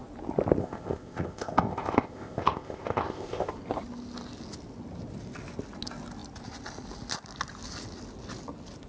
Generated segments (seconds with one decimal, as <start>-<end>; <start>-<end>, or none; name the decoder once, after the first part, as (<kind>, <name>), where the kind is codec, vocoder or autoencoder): 0.6-3.5 (codec, ZipCodec)